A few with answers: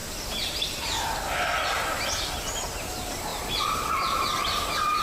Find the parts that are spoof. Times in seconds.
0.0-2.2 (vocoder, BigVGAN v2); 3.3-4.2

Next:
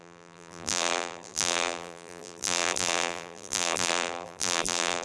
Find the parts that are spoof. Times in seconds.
0.0-5.0 (vocoder, BigVGAN v2)

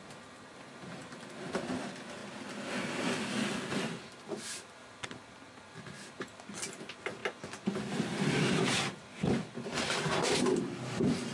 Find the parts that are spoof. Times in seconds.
0.0-2.2 (vocoder, BigVGAN v2); 4.9-7.2; 9.2-11.3